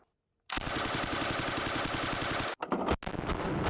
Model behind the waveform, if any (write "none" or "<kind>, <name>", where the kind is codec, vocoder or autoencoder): none